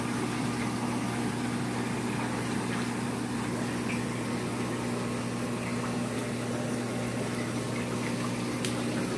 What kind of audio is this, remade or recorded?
recorded